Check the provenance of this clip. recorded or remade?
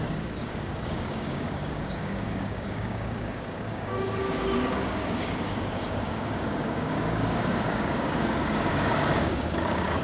remade